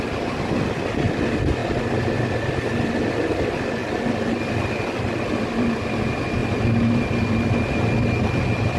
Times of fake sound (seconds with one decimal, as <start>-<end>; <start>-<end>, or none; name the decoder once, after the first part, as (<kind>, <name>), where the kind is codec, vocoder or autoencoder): none